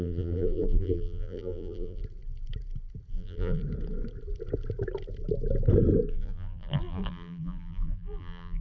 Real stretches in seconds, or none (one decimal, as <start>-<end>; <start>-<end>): 2.0-3.1; 3.6-6.1